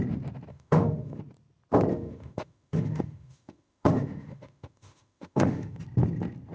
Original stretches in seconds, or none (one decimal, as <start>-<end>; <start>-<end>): 0.0-0.5; 1.2-1.9; 5.8-6.5